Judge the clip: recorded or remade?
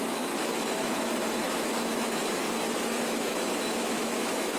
remade